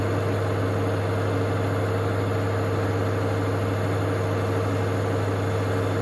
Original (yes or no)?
yes